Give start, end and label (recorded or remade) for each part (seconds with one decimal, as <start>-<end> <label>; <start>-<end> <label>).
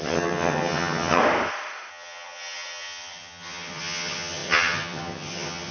0.0-1.2 remade; 1.2-1.9 recorded; 1.9-5.7 remade